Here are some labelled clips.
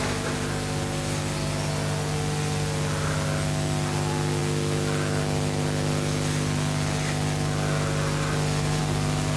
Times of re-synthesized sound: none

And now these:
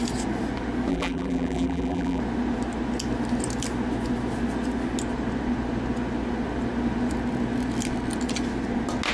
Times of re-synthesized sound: 0.9-2.2

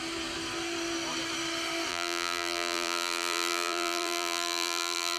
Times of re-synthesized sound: 1.9-5.2

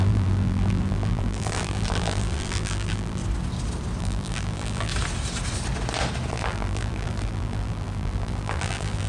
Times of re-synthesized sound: 0.0-3.2; 4.0-4.9; 6.3-9.1

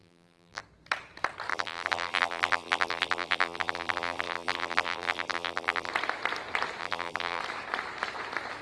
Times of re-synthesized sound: 0.0-0.6; 1.5-5.9; 6.8-7.4

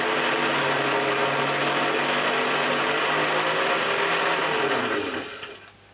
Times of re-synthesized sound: none